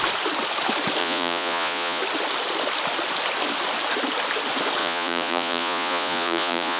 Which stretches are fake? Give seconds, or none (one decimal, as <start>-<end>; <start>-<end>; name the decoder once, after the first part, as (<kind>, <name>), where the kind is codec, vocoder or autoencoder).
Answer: 1.0-2.0 (vocoder, Vocos); 4.8-6.8